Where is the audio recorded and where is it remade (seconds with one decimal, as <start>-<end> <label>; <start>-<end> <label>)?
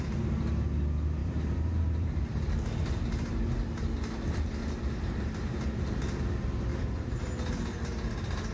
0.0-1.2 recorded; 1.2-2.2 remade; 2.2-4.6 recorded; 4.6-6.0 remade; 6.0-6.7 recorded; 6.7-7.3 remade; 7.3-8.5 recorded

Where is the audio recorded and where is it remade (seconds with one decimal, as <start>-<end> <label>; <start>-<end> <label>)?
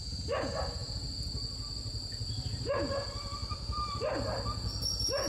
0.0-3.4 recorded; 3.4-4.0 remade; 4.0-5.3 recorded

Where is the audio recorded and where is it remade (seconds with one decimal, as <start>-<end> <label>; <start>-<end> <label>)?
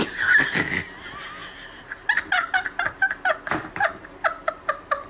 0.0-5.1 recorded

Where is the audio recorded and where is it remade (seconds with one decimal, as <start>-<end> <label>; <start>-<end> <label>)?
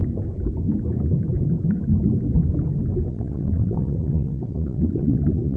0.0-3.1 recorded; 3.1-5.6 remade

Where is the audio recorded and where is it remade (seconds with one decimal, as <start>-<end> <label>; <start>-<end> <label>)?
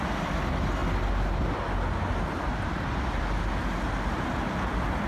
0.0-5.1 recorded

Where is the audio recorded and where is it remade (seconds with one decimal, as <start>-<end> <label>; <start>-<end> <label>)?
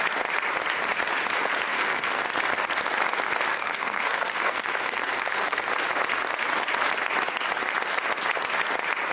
0.0-1.7 recorded; 1.7-2.2 remade; 2.2-3.5 recorded; 3.5-5.7 remade; 5.7-9.1 recorded